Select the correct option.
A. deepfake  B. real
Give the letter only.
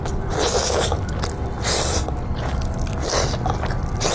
B